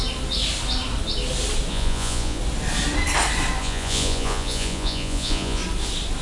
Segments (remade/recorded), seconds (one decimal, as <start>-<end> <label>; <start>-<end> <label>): 0.0-1.7 recorded; 1.7-2.4 remade; 2.4-3.6 recorded; 3.6-5.6 remade; 5.6-6.2 recorded